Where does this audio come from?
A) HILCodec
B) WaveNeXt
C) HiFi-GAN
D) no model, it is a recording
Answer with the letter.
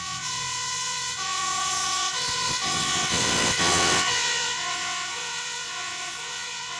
B